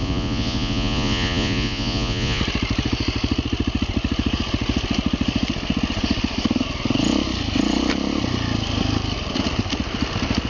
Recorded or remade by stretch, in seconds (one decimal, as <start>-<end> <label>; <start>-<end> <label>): 0.0-2.4 remade; 2.4-10.5 recorded